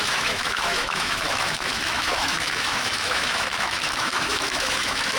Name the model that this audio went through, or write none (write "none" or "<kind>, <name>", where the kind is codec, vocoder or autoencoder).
autoencoder, DAC-VAE